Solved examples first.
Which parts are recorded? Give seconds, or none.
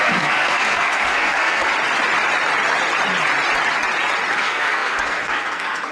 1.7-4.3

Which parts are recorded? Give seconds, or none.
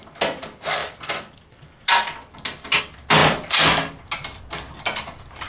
0.0-5.5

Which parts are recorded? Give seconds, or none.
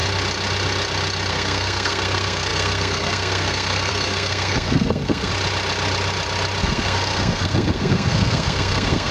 0.0-1.3; 5.3-6.6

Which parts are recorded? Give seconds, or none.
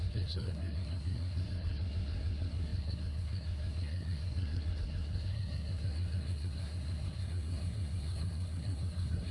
none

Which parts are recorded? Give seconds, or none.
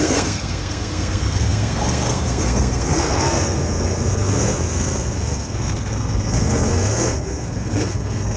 none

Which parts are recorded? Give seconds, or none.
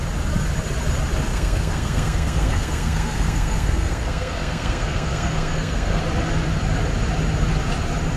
0.0-1.3; 6.0-8.2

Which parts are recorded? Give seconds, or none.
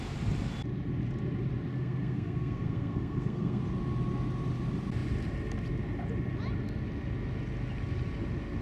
0.0-1.7; 3.6-8.6